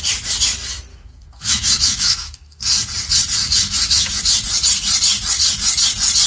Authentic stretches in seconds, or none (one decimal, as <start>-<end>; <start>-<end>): 0.0-0.9; 2.6-3.4; 4.2-6.3